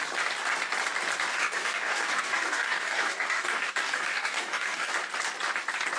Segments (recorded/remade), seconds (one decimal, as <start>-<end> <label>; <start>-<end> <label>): 0.0-1.3 recorded; 1.3-4.9 remade; 4.9-6.0 recorded